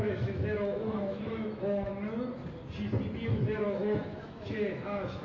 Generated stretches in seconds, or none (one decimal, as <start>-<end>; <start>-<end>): 0.0-1.9; 3.3-5.2